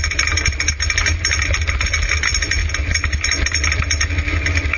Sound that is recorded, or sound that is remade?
recorded